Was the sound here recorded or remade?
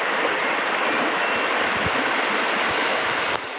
recorded